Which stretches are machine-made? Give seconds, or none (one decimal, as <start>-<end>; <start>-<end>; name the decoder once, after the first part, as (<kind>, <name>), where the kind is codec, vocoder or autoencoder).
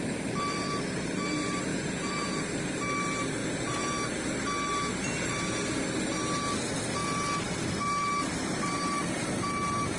1.7-2.4 (vocoder, Vocos); 3.4-3.9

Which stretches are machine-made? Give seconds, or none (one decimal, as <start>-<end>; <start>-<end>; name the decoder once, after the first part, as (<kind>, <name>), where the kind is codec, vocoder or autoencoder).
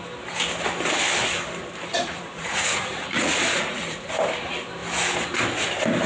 1.9-4.1 (vocoder, Vocos)